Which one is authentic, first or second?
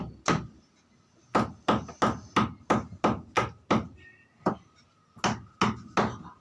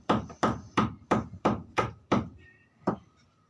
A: first